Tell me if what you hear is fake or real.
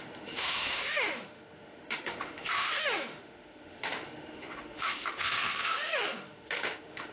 fake